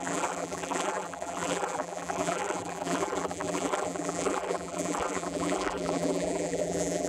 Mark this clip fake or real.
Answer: fake